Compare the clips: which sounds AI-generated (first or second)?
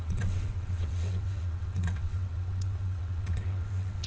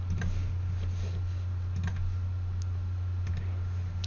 first